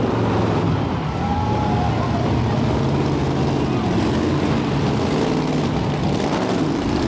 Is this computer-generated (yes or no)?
no